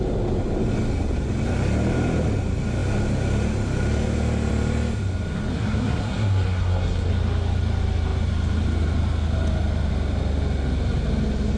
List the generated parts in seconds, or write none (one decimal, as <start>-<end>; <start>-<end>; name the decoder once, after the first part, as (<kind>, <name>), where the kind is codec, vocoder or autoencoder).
5.5-7.1 (codec, SNAC)